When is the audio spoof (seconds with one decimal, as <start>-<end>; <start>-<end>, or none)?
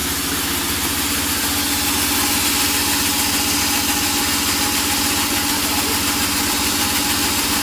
none